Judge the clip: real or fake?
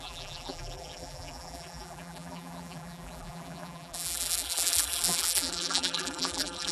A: fake